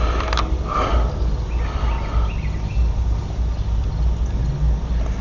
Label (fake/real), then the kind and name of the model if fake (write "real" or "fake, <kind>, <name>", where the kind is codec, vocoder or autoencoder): real